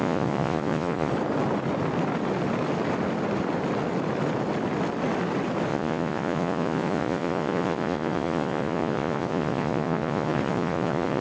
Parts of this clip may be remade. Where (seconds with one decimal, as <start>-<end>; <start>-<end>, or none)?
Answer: 0.0-1.1; 5.7-11.2